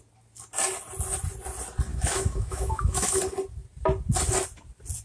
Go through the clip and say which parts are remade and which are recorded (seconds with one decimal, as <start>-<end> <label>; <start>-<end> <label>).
0.0-1.9 recorded; 1.9-3.2 remade; 3.2-5.0 recorded